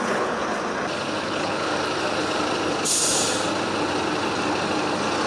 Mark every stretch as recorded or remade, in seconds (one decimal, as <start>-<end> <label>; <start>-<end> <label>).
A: 0.0-0.4 remade; 0.4-1.2 recorded; 1.2-1.7 remade; 1.7-5.3 recorded